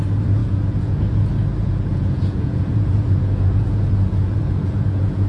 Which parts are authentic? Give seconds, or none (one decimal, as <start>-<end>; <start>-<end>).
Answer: 0.0-0.4; 1.0-1.9